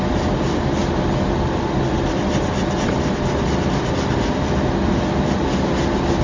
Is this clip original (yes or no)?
yes